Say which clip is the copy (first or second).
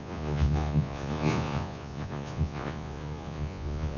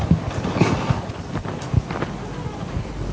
first